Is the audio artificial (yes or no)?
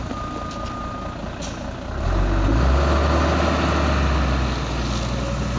no